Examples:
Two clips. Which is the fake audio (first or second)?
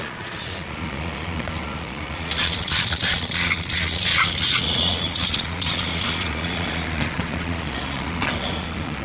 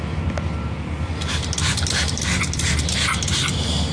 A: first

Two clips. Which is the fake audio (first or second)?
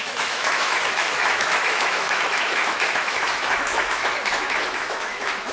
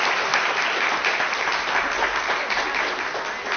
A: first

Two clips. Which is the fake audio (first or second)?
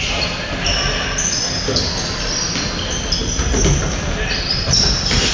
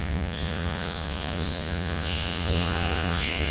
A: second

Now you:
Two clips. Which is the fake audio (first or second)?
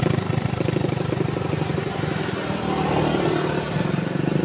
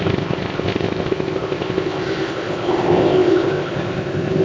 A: second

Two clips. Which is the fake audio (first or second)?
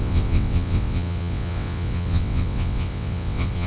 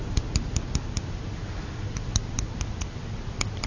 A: first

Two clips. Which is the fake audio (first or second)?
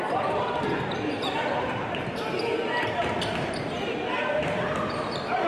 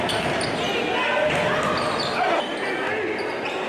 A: first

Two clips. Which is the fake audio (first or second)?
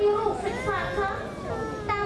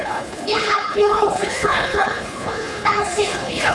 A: second